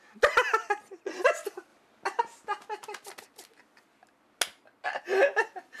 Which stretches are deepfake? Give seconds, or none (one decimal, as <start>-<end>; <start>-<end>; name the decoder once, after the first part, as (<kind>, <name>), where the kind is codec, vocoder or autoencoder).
none